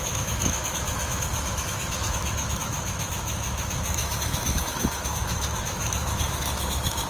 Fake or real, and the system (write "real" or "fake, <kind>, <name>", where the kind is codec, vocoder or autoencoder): fake, autoencoder, DAC-VAE